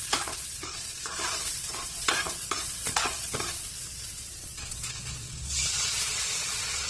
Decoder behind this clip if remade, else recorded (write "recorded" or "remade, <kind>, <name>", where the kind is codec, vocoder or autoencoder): remade, vocoder, Vocos